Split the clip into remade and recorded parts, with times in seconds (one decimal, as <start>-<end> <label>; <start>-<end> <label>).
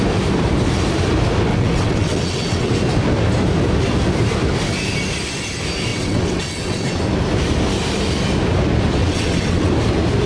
0.0-1.5 recorded; 1.5-2.7 remade; 2.7-5.9 recorded; 5.9-7.0 remade; 7.0-9.0 recorded; 9.0-9.7 remade; 9.7-10.3 recorded